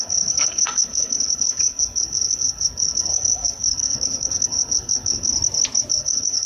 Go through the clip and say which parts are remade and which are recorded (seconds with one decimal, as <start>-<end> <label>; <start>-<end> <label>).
0.0-5.3 remade; 5.3-5.9 recorded; 5.9-6.5 remade